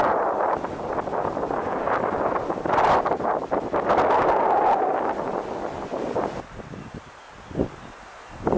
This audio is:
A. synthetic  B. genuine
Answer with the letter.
B